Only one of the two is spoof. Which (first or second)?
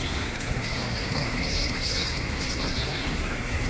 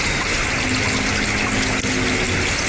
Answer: first